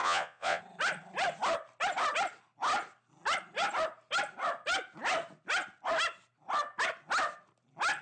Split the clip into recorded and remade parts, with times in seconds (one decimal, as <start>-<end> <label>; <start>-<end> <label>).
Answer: 0.0-0.6 remade; 0.6-8.0 recorded